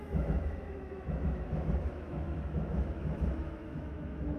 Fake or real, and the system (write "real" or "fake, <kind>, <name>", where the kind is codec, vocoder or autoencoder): fake, autoencoder, DAC-VAE